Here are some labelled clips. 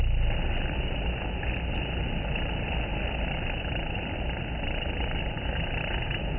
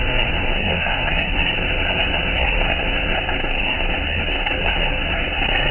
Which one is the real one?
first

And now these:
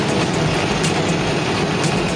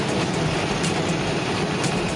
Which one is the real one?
first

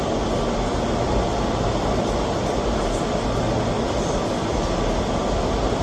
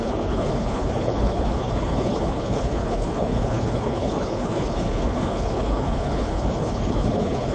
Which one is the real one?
first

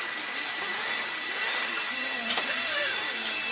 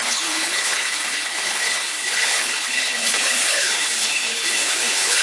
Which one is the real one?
first